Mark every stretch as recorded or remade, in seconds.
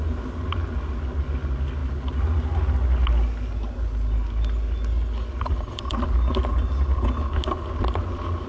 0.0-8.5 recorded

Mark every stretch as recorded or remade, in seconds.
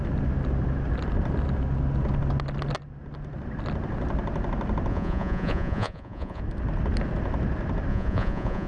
0.0-4.9 recorded; 4.9-6.4 remade; 6.4-7.9 recorded; 7.9-8.7 remade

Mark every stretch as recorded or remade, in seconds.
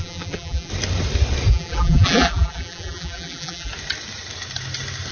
0.0-0.7 remade; 0.7-1.5 recorded; 1.5-3.7 remade; 3.7-5.1 recorded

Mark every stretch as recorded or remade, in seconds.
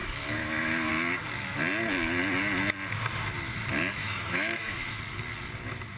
0.0-0.9 remade; 0.9-4.0 recorded; 4.0-5.0 remade; 5.0-6.0 recorded